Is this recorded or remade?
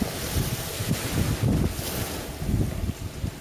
recorded